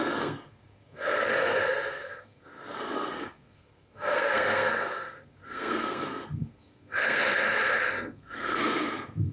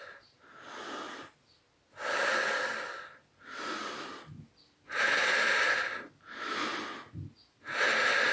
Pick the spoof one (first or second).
first